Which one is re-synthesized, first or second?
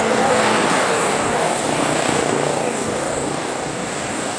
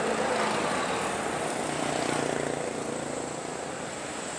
first